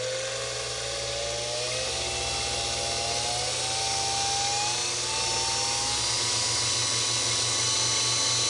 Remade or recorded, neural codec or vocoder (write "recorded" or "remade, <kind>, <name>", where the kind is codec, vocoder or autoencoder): recorded